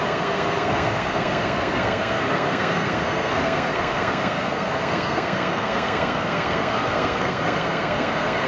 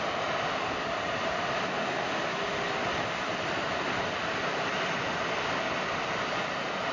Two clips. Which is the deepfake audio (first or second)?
first